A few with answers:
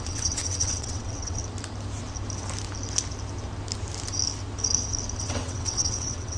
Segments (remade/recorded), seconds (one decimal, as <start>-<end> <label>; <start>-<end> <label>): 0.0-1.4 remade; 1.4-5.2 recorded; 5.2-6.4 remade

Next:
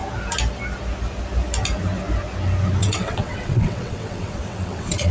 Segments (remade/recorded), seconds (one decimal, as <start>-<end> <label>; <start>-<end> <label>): 0.0-2.8 recorded; 2.8-5.1 remade

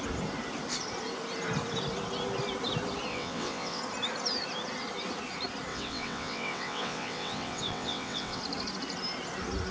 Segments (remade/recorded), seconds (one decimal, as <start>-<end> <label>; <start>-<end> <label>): 0.0-3.1 recorded; 3.1-3.8 remade; 3.8-5.7 recorded; 5.7-8.4 remade; 8.4-9.7 recorded